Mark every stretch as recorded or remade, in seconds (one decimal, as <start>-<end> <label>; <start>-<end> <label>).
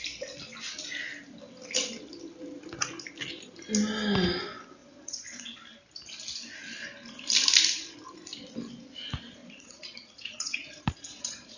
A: 0.0-4.8 recorded; 4.8-5.6 remade; 5.6-9.4 recorded; 9.4-11.6 remade